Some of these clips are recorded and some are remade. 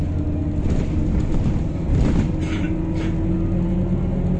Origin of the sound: recorded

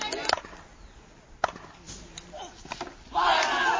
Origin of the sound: recorded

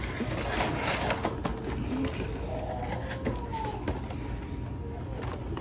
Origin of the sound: recorded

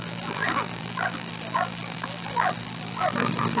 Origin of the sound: remade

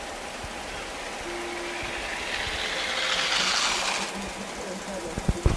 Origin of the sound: recorded